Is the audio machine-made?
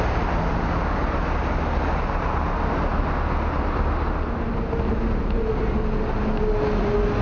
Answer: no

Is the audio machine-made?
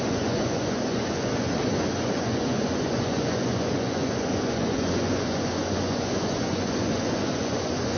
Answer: yes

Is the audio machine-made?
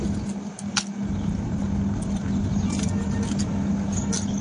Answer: no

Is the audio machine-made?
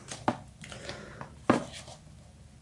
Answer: no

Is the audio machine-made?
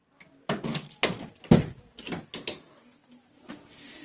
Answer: no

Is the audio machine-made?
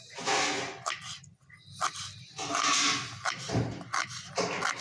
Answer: no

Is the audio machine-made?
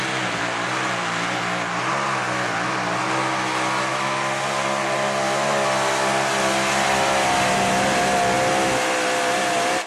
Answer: no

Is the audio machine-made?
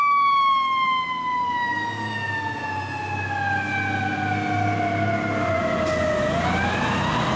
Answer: no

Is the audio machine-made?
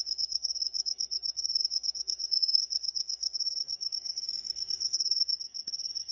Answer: yes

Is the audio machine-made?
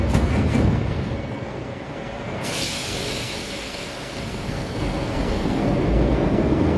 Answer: yes